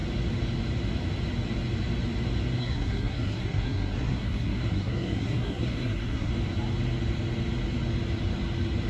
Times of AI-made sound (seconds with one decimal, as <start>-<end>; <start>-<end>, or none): 2.6-6.3